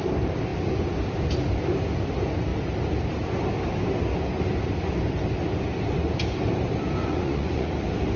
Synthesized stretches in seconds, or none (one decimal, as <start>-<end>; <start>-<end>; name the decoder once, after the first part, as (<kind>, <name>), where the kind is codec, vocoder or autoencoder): 7.0-7.7 (vocoder, Vocos)